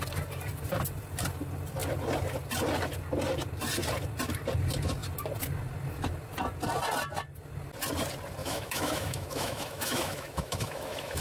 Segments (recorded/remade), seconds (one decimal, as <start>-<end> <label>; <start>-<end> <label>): 0.0-8.4 recorded; 8.4-11.2 remade